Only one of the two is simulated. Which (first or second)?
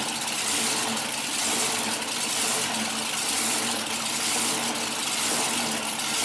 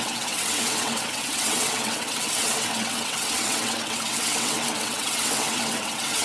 second